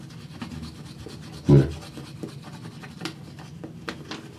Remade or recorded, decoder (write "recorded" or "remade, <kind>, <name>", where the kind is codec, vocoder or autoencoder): recorded